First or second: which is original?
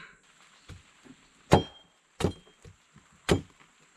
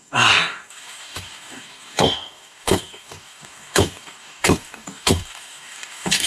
first